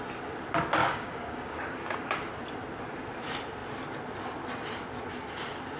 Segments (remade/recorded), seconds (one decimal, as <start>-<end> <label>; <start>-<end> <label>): 0.0-0.8 recorded; 0.8-2.1 remade; 2.1-5.8 recorded